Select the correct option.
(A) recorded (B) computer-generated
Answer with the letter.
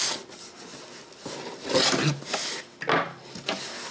A